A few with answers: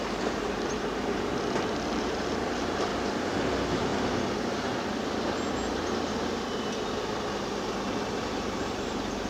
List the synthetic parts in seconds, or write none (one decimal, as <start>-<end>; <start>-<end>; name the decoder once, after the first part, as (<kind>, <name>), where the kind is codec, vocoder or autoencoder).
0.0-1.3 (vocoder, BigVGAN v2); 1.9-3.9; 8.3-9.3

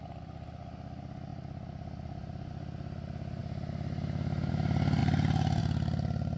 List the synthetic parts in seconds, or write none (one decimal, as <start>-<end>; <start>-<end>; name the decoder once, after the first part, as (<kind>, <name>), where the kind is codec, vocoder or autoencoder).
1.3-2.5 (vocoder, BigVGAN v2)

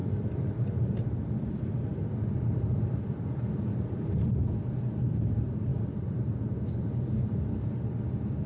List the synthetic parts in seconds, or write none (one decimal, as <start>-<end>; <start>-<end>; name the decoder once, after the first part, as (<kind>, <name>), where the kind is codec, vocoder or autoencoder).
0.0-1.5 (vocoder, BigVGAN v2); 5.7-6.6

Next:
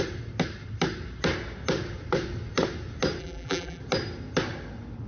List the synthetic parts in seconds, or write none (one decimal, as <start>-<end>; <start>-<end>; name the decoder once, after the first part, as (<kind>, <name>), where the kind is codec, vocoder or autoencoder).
3.2-3.8 (vocoder, BigVGAN v2)

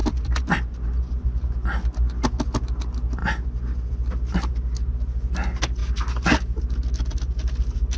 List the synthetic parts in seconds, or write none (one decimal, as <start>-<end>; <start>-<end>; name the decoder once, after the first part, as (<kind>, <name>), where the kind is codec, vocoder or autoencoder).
0.0-1.5 (vocoder, BigVGAN v2); 5.8-6.6